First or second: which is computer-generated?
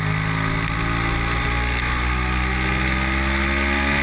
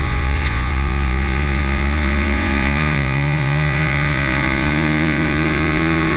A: second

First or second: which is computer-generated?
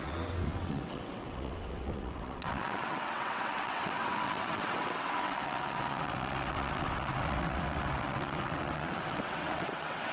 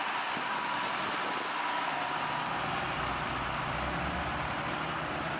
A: first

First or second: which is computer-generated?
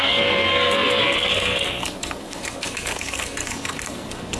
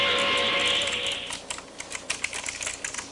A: first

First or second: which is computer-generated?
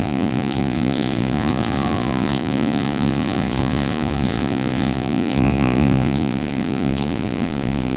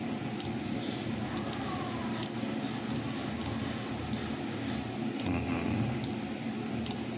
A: first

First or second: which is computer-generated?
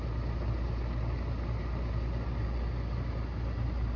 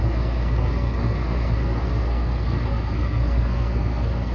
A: second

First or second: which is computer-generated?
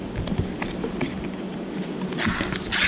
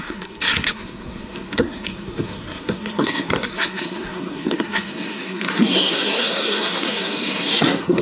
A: second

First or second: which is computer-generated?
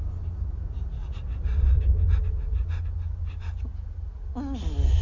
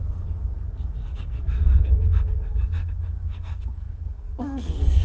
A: second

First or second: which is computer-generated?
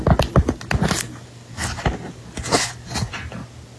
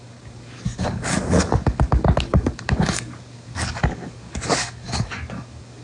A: second